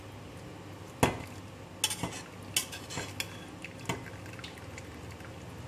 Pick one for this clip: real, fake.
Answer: real